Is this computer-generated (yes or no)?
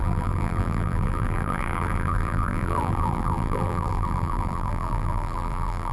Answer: yes